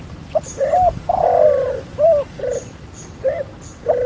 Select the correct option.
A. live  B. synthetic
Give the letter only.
A